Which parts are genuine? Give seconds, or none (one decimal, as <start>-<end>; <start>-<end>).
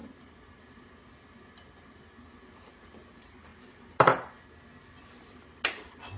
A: 0.6-3.5; 4.3-6.2